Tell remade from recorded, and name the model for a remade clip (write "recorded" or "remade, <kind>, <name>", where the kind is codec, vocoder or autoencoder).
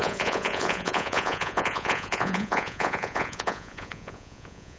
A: remade, vocoder, Vocos